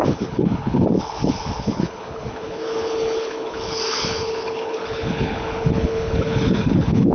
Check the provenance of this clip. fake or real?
fake